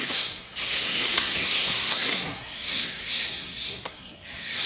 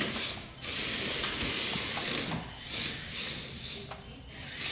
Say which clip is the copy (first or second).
first